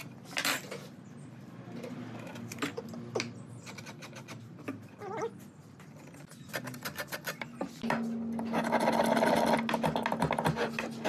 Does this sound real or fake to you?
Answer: real